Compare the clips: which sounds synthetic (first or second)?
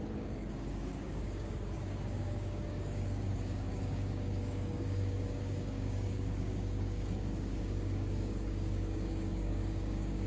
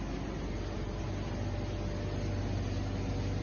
first